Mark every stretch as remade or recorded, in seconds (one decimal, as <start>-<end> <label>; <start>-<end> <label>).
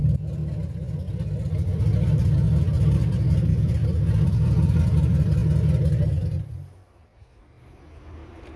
0.0-0.7 remade; 0.7-3.0 recorded; 3.0-7.4 remade; 7.4-8.6 recorded